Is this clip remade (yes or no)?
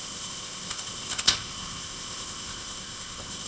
yes